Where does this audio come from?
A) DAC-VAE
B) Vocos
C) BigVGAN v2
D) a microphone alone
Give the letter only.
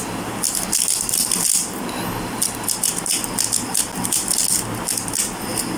D